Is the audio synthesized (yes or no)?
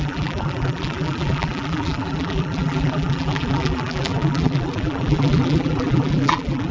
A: yes